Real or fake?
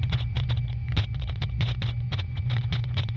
fake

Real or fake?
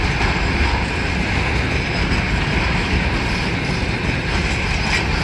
real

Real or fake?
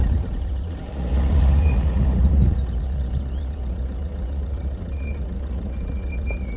fake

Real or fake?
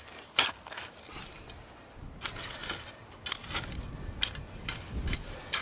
real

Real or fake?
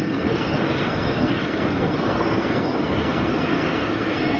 fake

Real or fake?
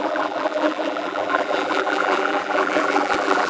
fake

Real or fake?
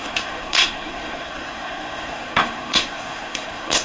fake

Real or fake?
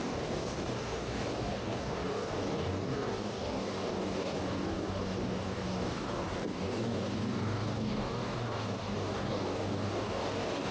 fake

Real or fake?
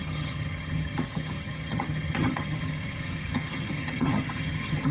fake